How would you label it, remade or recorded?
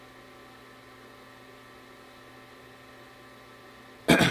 recorded